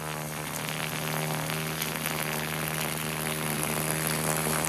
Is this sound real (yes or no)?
yes